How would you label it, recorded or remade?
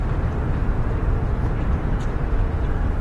remade